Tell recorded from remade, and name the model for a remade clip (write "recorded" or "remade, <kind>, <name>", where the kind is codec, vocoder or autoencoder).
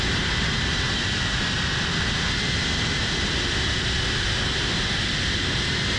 recorded